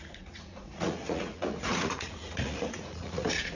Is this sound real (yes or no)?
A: no